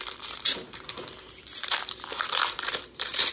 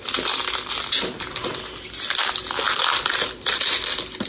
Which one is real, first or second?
second